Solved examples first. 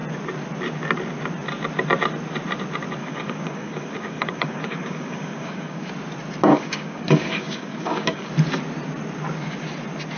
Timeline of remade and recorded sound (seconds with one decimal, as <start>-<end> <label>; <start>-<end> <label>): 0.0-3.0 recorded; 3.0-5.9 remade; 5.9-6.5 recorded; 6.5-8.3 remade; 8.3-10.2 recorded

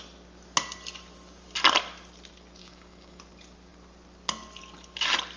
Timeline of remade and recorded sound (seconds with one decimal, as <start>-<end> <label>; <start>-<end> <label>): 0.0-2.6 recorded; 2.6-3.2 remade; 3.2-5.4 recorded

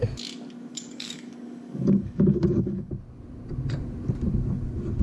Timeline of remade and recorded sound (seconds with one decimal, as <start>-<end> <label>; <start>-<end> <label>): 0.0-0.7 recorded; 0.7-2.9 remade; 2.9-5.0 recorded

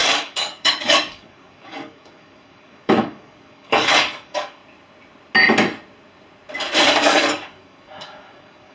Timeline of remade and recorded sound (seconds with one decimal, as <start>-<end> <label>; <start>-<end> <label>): 0.0-4.6 remade; 4.6-6.9 recorded; 6.9-8.7 remade

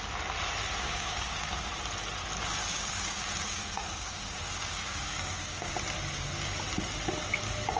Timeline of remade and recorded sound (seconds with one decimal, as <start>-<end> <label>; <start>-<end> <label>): 0.0-0.8 recorded; 0.8-1.7 remade; 1.7-2.6 recorded; 2.6-5.7 remade; 5.7-7.8 recorded

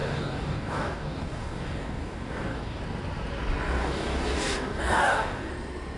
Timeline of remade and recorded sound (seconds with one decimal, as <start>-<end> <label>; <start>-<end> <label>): 0.0-2.8 remade; 2.8-3.8 recorded; 3.8-5.5 remade; 5.5-6.0 recorded

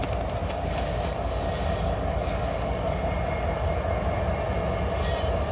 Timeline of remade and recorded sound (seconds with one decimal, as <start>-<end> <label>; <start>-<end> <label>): 0.0-0.4 recorded; 0.4-3.0 remade; 3.0-5.5 recorded